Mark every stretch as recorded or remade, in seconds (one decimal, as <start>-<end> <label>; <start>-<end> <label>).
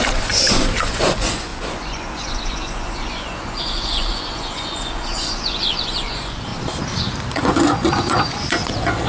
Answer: 0.0-6.5 remade; 6.5-7.3 recorded; 7.3-9.1 remade